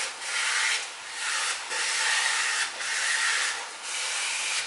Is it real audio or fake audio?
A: real